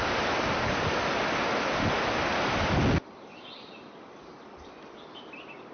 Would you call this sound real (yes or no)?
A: yes